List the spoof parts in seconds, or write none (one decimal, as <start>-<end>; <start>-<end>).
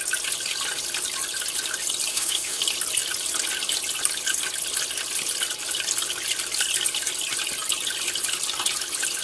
2.1-2.6